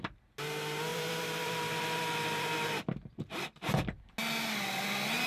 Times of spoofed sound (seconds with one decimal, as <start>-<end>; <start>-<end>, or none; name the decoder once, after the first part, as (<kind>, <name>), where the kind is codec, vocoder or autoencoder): 0.9-4.1 (vocoder, BigVGAN v2)